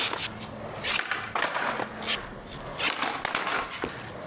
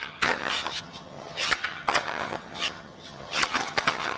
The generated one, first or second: second